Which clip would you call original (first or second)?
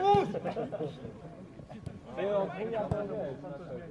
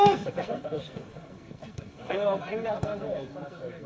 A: first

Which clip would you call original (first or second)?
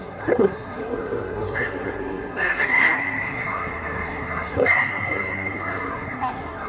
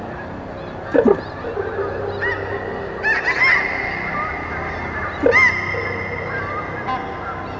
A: second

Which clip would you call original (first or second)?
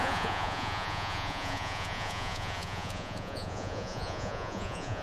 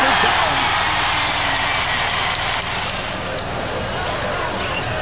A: second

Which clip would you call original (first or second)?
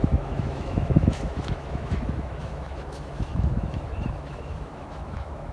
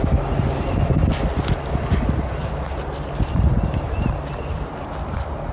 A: second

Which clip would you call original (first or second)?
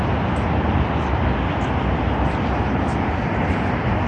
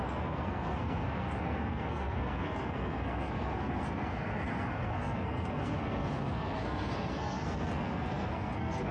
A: first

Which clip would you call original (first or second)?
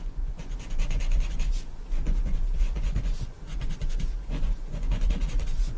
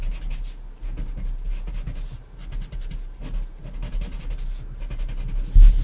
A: second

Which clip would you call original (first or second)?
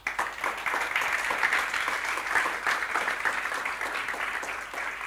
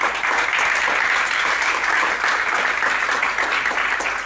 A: second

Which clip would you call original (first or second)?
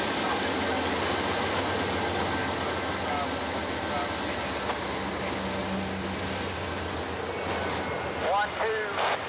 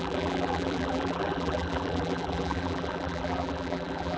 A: first